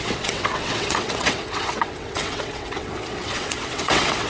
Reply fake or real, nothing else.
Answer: fake